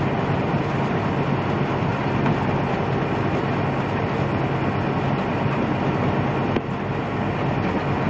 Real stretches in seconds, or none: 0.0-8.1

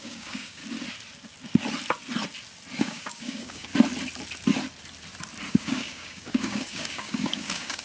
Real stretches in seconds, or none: 0.6-2.8; 3.7-5.5

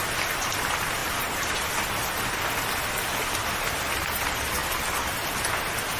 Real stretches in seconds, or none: 0.0-6.0

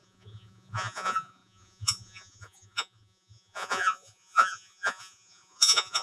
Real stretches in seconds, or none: none

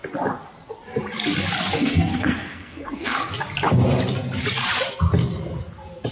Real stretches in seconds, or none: 0.0-1.8; 3.3-6.1

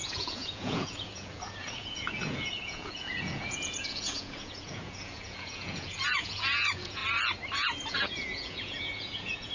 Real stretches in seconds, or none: 7.0-7.9

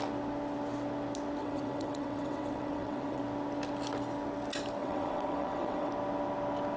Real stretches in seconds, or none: 0.0-1.4; 3.2-4.8; 5.9-6.8